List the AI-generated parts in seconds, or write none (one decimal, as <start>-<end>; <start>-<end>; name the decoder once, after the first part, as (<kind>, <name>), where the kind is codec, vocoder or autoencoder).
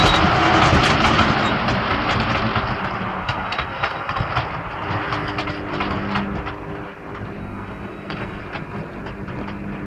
3.2-4.3 (codec, SNAC); 7.4-8.4